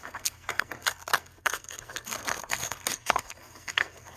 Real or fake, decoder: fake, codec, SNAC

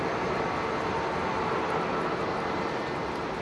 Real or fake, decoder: real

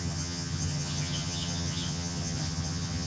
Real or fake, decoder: fake, vocoder, HiFi-GAN